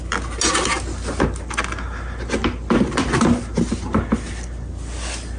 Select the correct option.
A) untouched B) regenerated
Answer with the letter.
A